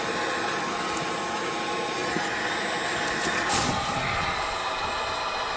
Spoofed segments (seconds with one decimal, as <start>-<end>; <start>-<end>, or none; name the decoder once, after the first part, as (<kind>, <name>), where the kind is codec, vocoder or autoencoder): none